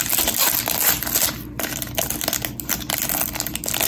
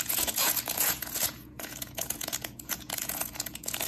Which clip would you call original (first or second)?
first